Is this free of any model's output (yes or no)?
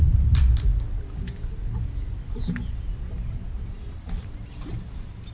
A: yes